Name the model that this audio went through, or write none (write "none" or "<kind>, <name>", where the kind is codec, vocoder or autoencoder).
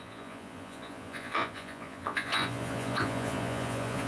vocoder, Vocos